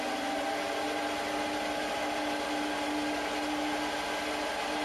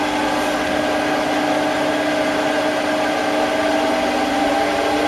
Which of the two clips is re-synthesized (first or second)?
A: second